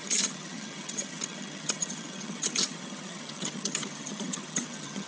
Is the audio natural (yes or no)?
no